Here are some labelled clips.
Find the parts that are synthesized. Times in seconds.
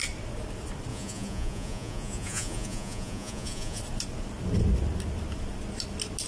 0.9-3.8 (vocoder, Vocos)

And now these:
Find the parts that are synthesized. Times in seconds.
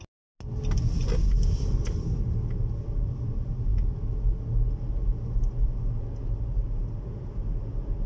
none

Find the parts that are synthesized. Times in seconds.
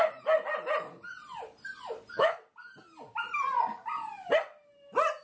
none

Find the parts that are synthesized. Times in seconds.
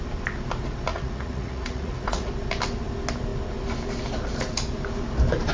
0.9-2.3 (vocoder, Vocos)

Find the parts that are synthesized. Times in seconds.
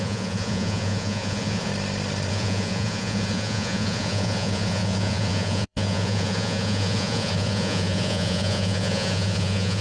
0.0-1.7 (vocoder, Vocos); 2.3-9.8